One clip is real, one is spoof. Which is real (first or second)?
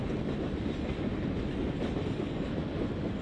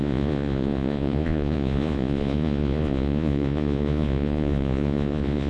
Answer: first